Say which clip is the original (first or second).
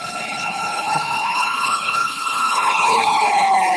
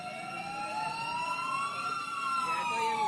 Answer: second